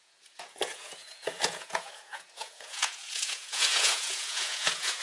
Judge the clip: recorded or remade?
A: remade